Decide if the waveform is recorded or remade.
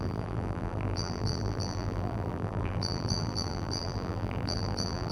remade